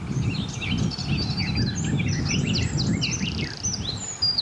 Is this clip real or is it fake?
real